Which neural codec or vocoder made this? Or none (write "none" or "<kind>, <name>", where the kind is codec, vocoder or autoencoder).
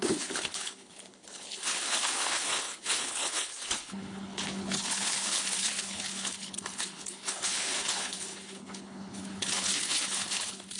codec, HILCodec